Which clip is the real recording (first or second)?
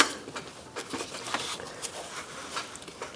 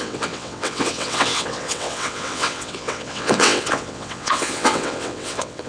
first